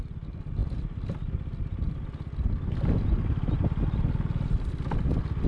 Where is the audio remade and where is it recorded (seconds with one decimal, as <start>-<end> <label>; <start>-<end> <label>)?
0.0-5.5 recorded